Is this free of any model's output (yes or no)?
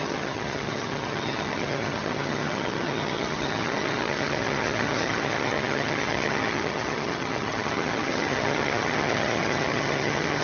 no